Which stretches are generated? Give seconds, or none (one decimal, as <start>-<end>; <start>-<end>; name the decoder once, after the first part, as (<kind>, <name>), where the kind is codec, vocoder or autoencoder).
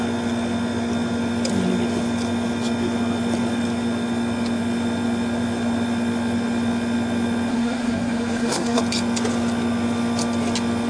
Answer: 7.5-8.8 (codec, SNAC)